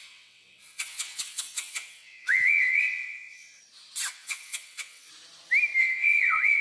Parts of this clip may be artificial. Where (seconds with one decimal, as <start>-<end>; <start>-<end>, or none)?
0.0-3.6; 4.1-5.1; 5.8-6.6